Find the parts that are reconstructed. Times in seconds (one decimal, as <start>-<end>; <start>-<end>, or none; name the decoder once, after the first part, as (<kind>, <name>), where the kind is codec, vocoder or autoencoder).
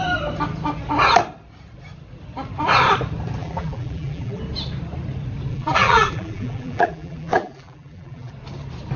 3.4-4.4 (vocoder, BigVGAN v2); 5.5-8.3